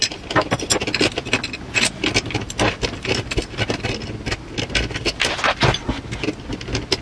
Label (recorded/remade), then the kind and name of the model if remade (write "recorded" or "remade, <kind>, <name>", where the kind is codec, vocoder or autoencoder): recorded